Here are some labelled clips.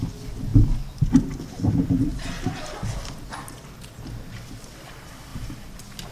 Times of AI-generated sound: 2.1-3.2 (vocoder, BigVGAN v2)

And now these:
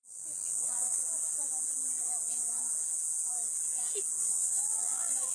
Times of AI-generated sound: 0.0-1.0 (vocoder, BigVGAN v2); 4.2-5.3